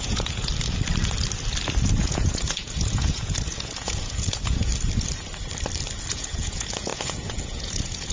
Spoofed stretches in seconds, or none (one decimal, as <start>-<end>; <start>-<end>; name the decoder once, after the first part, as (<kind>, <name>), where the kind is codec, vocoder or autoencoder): 0.0-0.5 (vocoder, Vocos); 2.0-4.7; 6.1-8.1